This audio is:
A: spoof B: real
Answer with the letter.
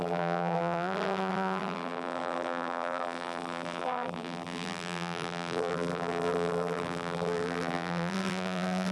A